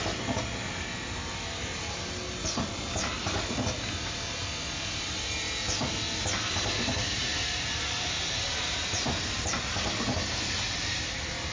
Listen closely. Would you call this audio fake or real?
real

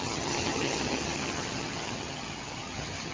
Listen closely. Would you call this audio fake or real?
fake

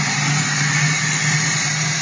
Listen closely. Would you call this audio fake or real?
real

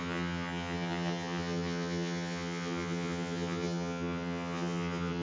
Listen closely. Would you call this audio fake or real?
fake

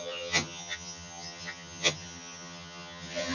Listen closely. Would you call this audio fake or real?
fake